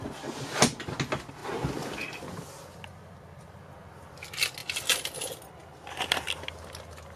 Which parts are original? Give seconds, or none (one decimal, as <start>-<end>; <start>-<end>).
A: 0.0-7.2